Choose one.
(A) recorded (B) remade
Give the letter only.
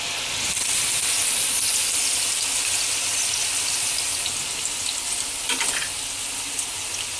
A